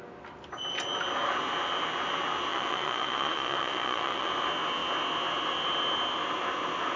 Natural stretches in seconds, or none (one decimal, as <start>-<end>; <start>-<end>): 0.0-2.5; 4.3-7.0